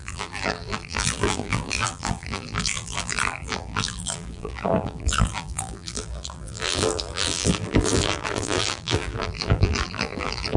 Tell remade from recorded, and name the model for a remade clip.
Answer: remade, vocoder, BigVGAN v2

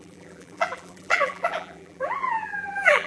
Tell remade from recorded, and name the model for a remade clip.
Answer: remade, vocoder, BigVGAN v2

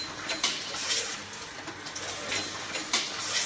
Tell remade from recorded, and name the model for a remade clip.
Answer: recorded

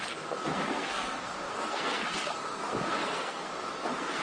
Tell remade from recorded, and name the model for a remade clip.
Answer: remade, codec, SNAC